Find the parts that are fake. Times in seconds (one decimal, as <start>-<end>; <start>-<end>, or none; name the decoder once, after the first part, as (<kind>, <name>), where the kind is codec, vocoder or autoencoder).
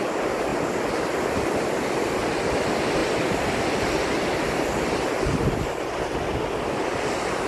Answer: none